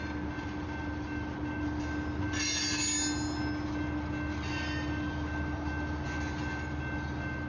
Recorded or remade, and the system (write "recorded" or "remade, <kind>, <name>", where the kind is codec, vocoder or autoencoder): recorded